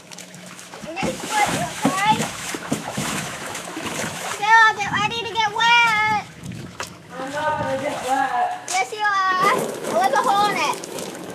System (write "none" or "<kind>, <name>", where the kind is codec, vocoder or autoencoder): autoencoder, DAC-VAE